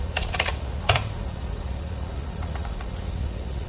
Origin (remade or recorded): remade